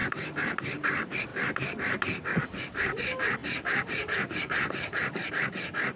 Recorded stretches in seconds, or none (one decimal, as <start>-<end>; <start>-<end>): 0.8-1.3; 2.0-3.4; 5.3-6.0